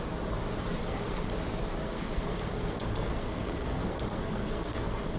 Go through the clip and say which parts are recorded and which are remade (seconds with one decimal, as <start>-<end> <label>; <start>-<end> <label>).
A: 0.0-0.8 recorded; 0.8-1.3 remade; 1.3-1.8 recorded; 1.8-5.2 remade